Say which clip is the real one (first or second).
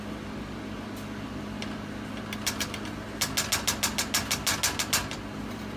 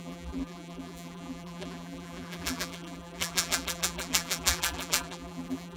first